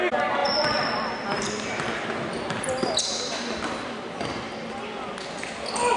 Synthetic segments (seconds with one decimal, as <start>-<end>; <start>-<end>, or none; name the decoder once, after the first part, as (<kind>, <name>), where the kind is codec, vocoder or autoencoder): 0.4-2.9 (vocoder, BigVGAN v2)